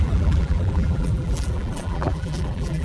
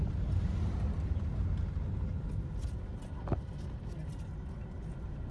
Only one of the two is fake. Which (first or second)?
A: first